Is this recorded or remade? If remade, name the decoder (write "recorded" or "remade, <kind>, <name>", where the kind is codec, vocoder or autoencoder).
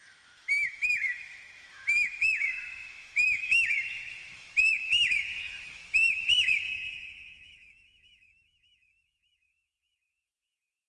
remade, autoencoder, DAC-VAE